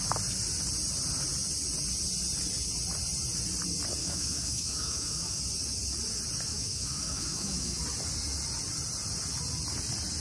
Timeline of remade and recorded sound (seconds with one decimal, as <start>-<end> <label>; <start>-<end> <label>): 0.0-4.0 recorded; 4.0-5.4 remade; 5.4-6.5 recorded; 6.5-7.8 remade; 7.8-10.2 recorded